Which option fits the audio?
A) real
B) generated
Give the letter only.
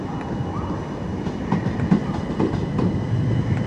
A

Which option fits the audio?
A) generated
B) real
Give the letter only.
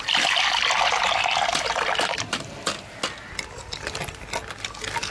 B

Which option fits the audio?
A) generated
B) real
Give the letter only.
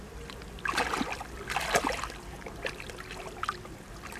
B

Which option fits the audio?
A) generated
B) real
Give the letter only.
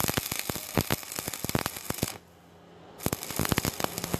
B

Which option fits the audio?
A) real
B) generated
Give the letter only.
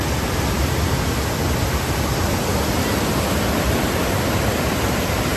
A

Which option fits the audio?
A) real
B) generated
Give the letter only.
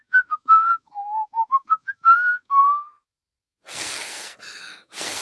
B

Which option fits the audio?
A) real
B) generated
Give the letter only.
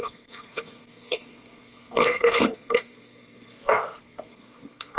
B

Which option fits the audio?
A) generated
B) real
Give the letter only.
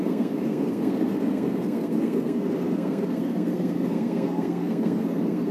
A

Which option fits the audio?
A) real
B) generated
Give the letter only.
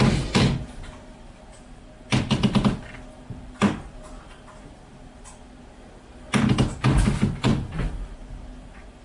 A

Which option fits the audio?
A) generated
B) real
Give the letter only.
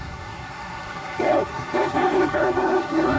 A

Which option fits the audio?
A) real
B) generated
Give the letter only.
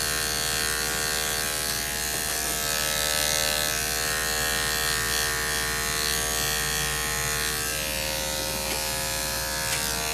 A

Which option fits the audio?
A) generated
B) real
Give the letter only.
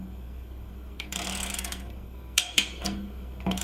A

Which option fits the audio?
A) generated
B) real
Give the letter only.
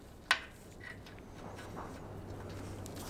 B